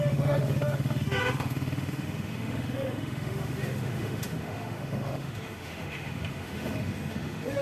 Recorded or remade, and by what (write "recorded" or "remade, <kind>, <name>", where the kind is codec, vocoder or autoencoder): remade, autoencoder, DAC-VAE